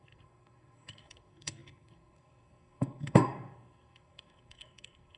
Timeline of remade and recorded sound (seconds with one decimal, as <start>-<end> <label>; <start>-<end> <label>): 0.0-5.2 remade